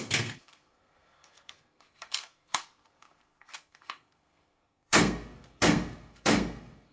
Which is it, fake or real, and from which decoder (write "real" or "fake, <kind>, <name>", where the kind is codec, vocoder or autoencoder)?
fake, codec, SNAC